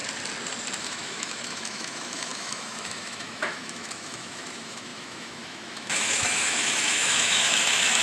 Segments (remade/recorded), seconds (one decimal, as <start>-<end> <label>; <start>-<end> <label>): 0.0-0.8 recorded; 0.8-8.0 remade